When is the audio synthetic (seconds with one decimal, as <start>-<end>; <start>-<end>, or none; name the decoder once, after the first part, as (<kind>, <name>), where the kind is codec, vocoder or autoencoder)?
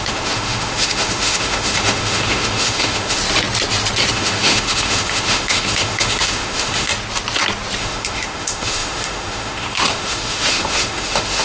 0.0-3.2 (autoencoder, DAC-VAE); 4.1-6.9; 7.8-11.4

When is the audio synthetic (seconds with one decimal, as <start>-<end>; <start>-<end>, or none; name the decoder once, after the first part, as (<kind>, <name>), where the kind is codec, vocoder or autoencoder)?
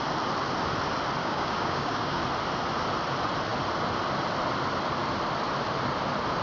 1.2-2.2 (codec, DAC)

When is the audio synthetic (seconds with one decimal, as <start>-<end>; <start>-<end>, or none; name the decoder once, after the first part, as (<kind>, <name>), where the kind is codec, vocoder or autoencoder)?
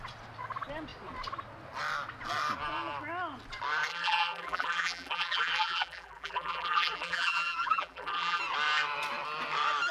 3.9-8.4 (vocoder, BigVGAN v2)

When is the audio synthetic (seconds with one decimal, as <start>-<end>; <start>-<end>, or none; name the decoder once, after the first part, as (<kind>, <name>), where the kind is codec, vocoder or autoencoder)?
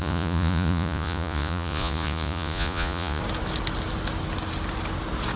0.0-3.2 (vocoder, Vocos)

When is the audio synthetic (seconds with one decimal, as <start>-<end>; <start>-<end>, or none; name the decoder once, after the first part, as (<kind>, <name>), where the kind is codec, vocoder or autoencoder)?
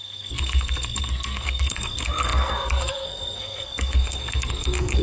0.0-5.0 (codec, SNAC)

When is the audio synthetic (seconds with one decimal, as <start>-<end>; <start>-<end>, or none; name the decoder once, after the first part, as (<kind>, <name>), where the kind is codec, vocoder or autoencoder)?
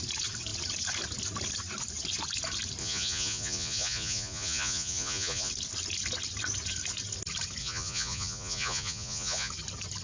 2.8-5.5 (vocoder, Vocos); 7.6-9.5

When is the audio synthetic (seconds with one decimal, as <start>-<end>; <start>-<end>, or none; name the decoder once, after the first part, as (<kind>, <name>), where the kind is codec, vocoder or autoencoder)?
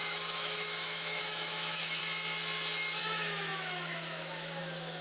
0.0-2.0 (autoencoder, DAC-VAE); 3.0-5.0